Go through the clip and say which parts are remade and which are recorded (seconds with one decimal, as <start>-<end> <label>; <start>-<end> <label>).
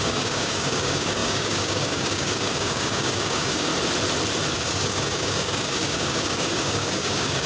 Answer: 0.0-3.7 remade; 3.7-4.5 recorded; 4.5-7.5 remade